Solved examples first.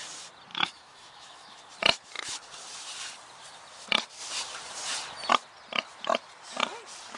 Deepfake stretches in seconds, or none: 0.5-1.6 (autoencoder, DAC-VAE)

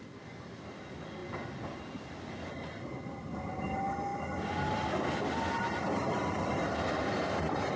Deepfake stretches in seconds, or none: none

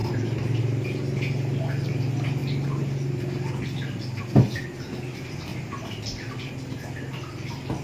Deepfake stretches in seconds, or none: 0.0-0.6 (vocoder, BigVGAN v2); 2.4-4.2; 5.5-6.5

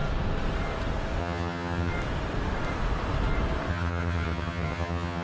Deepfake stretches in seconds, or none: 1.2-1.9 (vocoder, HiFi-GAN); 3.7-5.2

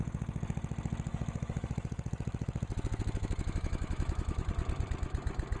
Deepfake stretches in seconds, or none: 1.1-4.5 (autoencoder, DAC-VAE)

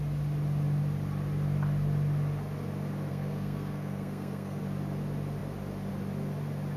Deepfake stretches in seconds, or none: 3.1-4.6 (codec, SNAC)

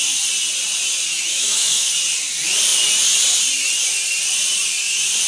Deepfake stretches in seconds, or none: 1.1-1.9 (autoencoder, DAC-VAE)

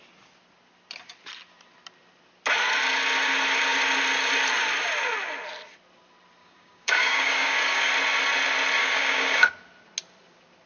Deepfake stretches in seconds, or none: 6.4-7.9 (codec, DAC); 8.8-9.5